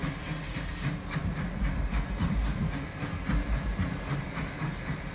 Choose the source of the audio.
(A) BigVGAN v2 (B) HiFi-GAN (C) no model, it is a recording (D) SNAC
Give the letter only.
C